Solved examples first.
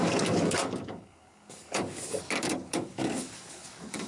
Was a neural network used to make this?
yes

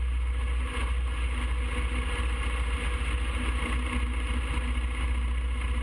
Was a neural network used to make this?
no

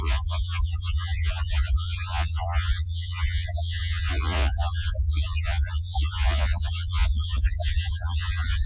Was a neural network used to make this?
yes